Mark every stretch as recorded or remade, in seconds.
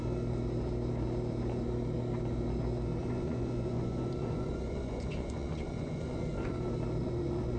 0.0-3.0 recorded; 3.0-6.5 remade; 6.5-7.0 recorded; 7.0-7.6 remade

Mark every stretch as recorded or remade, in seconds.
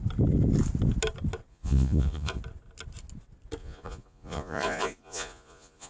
0.0-1.5 recorded; 1.5-2.4 remade; 2.4-3.6 recorded; 3.6-5.9 remade